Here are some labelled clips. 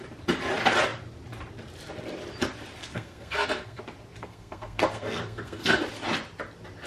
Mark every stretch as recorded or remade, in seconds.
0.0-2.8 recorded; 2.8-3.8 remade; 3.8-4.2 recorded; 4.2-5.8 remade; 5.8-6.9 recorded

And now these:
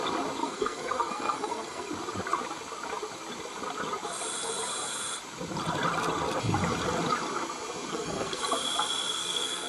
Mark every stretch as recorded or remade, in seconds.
0.0-0.4 recorded; 0.4-1.9 remade; 1.9-7.9 recorded; 7.9-8.4 remade; 8.4-9.2 recorded; 9.2-9.7 remade

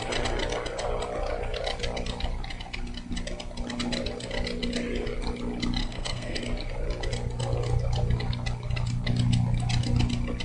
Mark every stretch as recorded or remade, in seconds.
0.0-5.8 recorded; 5.8-6.4 remade; 6.4-10.4 recorded

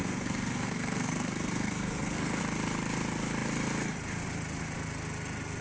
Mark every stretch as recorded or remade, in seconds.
0.0-2.4 remade; 2.4-5.6 recorded

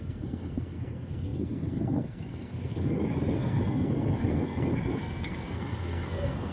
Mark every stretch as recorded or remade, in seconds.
0.0-6.5 remade

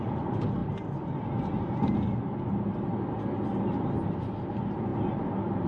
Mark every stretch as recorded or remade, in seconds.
0.0-5.7 recorded

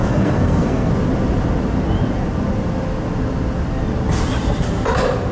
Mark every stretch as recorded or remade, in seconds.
0.0-0.9 remade; 0.9-5.3 recorded

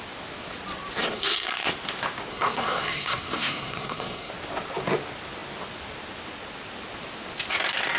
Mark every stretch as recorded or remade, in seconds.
0.0-1.0 recorded; 1.0-1.7 remade; 1.7-2.3 recorded; 2.3-4.3 remade; 4.3-8.0 recorded